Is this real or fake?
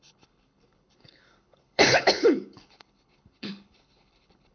fake